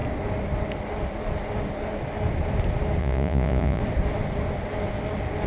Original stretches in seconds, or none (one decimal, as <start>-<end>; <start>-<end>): 0.0-3.0; 3.8-5.5